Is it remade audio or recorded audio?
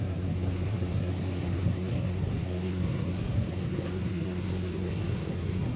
remade